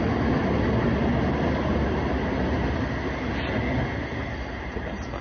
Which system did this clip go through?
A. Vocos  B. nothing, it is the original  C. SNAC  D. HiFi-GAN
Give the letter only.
B